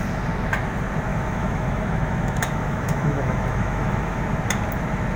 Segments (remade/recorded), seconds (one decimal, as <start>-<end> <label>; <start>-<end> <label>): 0.0-1.1 recorded; 1.1-4.2 remade; 4.2-5.2 recorded